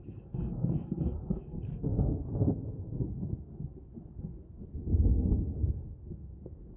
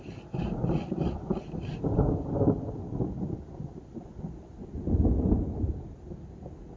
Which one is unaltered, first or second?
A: second